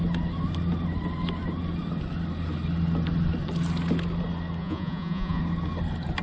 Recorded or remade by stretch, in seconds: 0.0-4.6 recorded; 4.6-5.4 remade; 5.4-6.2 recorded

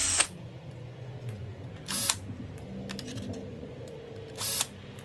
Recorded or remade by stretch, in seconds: 0.0-1.7 remade; 1.7-3.5 recorded; 3.5-4.1 remade; 4.1-5.0 recorded

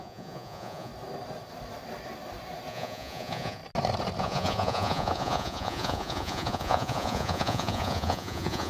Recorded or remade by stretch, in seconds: 0.0-0.9 remade; 0.9-2.7 recorded; 2.7-3.6 remade; 3.6-4.2 recorded; 4.2-8.7 remade

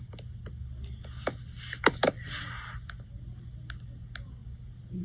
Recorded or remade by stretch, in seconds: 0.0-5.0 recorded